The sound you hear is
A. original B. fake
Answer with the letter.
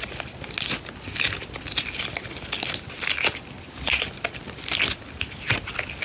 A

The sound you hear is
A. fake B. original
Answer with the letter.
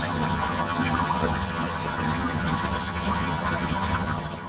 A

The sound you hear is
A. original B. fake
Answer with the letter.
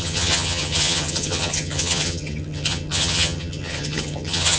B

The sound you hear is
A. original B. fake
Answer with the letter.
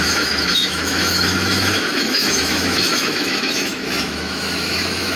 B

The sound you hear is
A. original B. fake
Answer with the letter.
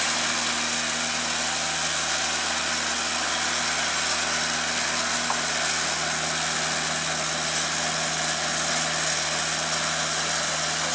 A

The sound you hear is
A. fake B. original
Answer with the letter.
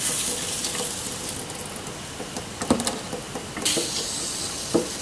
B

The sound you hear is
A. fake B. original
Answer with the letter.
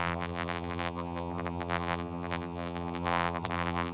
A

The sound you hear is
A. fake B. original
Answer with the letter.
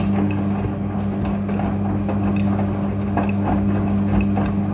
B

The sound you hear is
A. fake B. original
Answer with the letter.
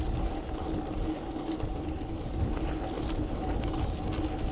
B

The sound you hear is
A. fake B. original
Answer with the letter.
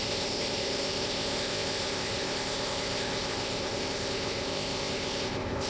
A